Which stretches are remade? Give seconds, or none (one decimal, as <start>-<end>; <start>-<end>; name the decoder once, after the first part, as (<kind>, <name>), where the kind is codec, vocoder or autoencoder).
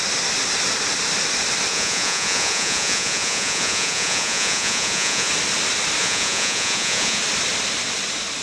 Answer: 1.7-5.3 (vocoder, Vocos); 6.0-7.2